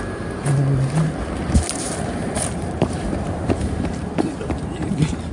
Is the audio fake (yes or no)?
yes